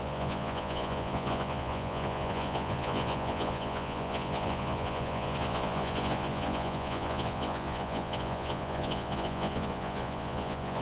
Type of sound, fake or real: fake